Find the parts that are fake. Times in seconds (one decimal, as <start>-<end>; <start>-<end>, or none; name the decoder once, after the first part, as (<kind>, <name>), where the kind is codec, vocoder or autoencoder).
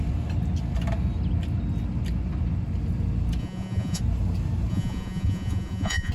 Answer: 3.4-4.0 (vocoder, Vocos); 4.7-6.1